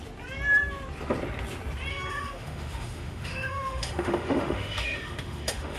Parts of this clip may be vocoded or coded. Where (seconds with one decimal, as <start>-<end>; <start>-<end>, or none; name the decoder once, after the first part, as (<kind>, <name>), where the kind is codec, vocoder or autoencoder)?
1.9-5.8 (autoencoder, DAC-VAE)